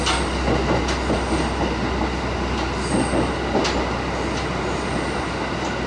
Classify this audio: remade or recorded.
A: recorded